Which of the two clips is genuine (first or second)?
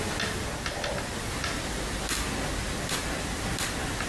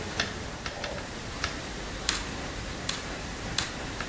first